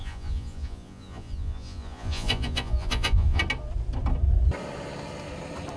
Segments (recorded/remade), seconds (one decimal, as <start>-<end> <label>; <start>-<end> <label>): 0.0-3.4 remade; 3.4-5.8 recorded